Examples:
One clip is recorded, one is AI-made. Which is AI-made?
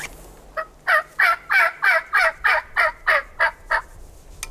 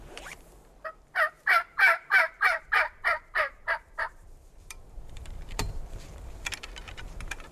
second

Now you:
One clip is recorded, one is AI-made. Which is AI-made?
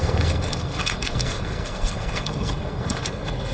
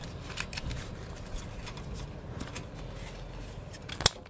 first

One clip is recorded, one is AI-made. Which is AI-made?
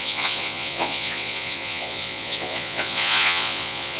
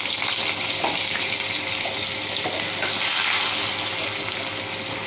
first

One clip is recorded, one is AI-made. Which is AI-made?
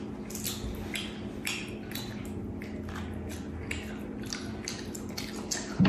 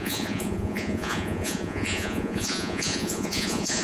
second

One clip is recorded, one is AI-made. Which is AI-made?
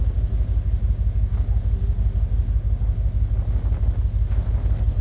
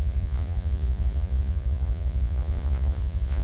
second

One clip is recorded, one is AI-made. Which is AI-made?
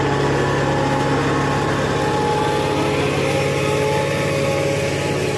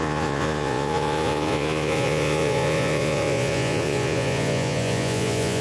second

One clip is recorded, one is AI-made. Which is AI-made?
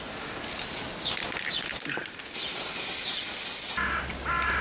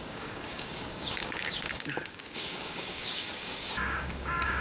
second